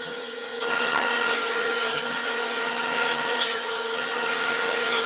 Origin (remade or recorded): remade